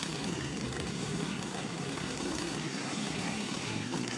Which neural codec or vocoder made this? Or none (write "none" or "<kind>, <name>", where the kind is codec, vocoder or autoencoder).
codec, SNAC